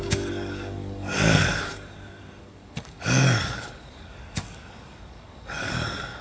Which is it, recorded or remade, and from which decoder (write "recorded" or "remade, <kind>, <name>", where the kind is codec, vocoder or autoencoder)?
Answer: remade, codec, DAC